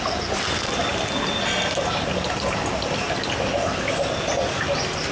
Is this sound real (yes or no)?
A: yes